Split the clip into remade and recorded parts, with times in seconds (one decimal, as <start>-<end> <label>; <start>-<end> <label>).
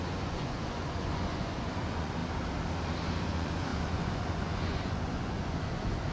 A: 0.0-2.2 remade; 2.2-3.2 recorded; 3.2-6.1 remade